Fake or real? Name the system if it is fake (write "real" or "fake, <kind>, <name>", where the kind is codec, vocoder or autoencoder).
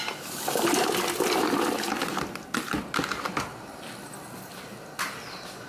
real